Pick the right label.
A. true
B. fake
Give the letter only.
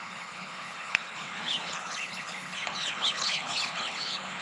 B